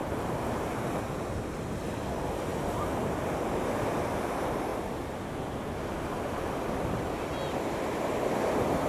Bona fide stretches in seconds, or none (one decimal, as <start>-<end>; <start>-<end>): 1.6-8.9